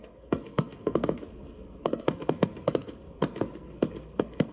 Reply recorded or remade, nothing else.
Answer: remade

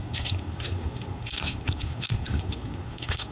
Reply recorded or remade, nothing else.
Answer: remade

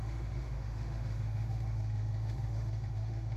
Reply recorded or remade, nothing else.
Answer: remade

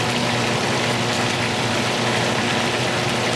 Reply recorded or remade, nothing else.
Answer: recorded